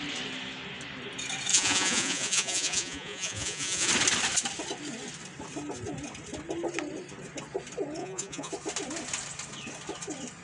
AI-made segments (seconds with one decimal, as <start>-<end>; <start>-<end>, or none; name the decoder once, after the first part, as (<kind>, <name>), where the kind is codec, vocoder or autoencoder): 1.5-3.9 (vocoder, Vocos); 8.0-8.5